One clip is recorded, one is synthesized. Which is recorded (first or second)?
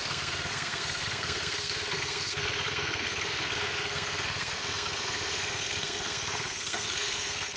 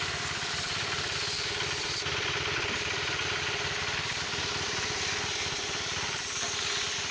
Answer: second